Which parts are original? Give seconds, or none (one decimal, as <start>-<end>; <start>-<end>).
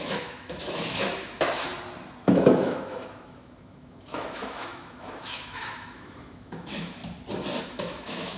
1.7-2.3; 7.0-7.6